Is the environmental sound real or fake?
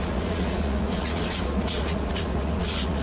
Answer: fake